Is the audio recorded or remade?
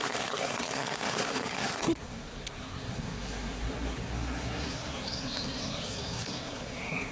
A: remade